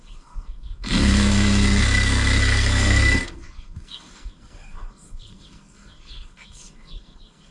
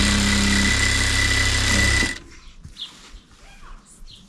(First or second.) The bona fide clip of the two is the second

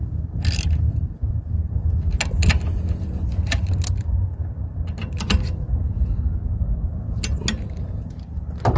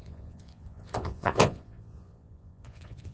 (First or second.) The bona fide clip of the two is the first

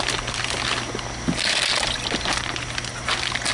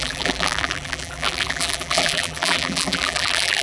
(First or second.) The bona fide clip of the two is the first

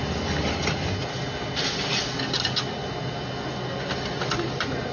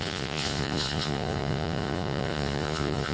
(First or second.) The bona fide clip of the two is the first